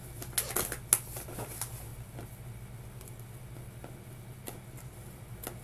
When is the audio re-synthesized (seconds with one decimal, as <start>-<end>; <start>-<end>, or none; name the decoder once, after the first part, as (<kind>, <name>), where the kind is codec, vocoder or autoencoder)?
none